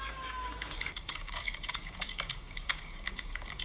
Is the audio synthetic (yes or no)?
yes